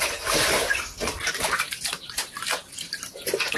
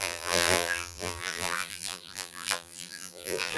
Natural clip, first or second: first